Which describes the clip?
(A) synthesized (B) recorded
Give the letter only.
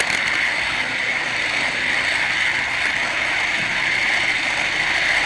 B